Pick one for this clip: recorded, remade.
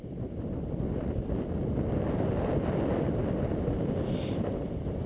recorded